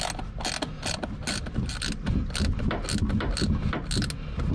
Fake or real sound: real